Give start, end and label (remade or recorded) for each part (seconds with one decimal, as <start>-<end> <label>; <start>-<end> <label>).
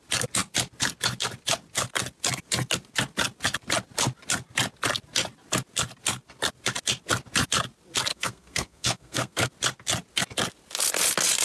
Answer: 0.0-8.1 recorded; 8.1-9.5 remade; 9.5-11.4 recorded